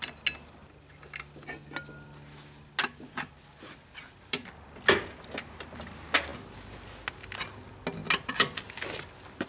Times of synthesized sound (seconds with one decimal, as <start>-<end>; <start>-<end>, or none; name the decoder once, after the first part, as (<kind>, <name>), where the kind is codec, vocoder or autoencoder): none